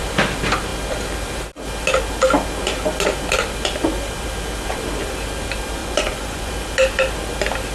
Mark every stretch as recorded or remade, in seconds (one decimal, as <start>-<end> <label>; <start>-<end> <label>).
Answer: 0.0-5.8 recorded; 5.8-6.5 remade; 6.5-7.7 recorded